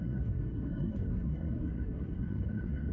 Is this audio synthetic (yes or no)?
yes